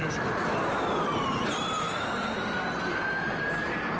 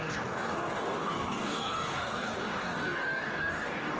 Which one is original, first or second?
first